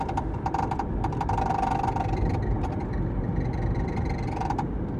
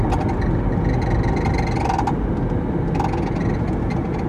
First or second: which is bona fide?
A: second